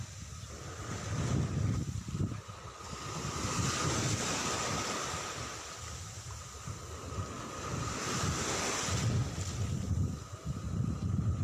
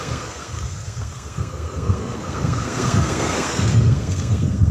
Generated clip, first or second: second